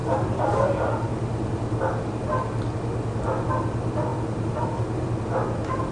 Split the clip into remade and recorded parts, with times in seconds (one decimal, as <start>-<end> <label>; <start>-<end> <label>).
0.0-5.9 recorded